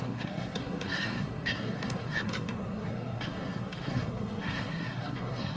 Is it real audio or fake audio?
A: fake